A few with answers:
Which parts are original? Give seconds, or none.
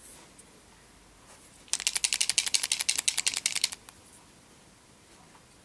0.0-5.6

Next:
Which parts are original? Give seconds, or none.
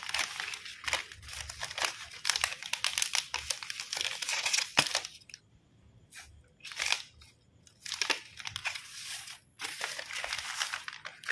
0.0-4.3; 4.8-8.6; 9.8-11.3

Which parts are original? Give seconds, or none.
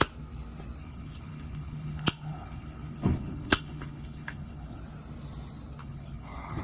0.0-0.8; 4.8-5.8